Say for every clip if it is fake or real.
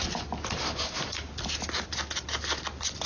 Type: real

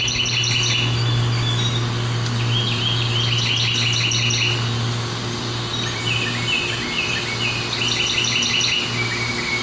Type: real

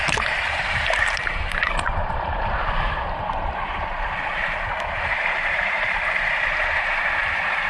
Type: fake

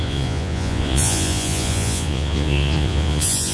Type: fake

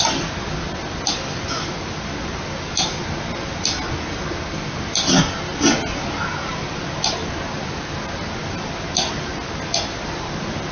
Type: real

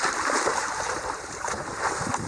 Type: fake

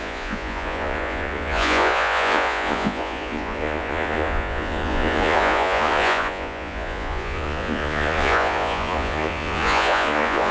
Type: fake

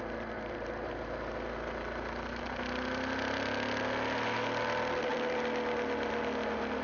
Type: real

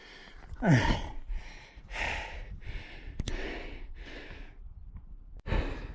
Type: real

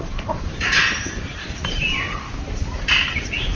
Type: fake